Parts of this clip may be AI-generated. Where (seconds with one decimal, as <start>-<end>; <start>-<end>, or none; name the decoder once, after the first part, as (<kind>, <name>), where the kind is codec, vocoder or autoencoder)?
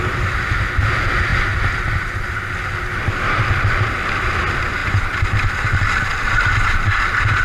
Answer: none